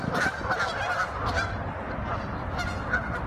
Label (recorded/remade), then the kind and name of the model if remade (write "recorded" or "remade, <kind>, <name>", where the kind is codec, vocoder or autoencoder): recorded